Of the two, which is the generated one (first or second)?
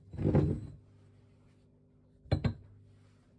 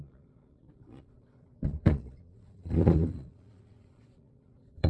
second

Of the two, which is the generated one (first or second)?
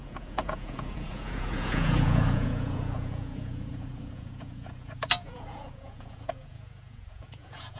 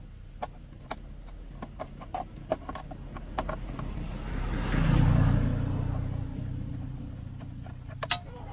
first